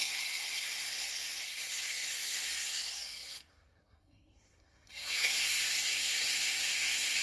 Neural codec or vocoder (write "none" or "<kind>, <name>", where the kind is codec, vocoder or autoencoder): codec, SNAC